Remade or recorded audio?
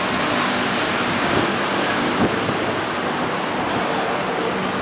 recorded